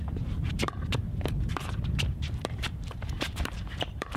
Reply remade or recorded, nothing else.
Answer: remade